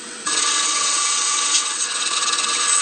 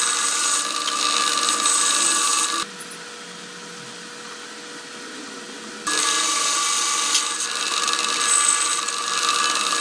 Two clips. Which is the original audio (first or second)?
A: second